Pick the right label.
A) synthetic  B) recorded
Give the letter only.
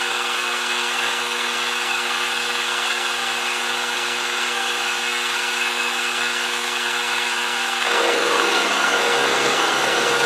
A